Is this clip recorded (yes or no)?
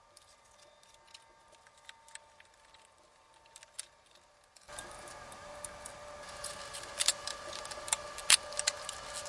yes